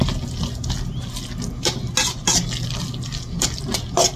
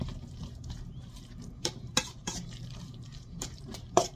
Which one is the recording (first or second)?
first